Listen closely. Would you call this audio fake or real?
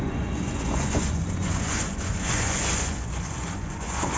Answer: fake